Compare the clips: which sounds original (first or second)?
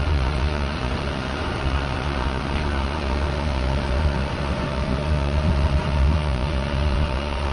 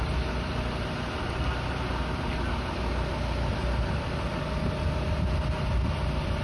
second